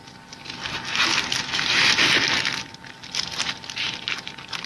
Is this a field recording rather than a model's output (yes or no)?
yes